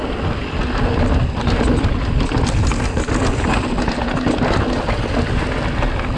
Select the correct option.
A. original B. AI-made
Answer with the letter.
A